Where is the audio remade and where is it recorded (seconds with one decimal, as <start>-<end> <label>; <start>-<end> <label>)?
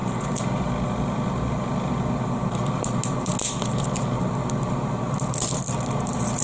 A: 0.0-6.4 recorded